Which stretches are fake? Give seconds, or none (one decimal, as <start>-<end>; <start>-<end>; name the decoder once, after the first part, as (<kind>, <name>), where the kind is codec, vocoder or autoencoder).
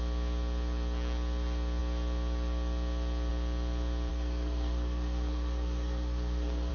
4.1-6.7 (codec, SNAC)